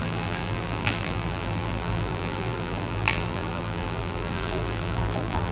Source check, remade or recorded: remade